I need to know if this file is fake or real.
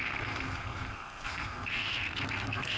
fake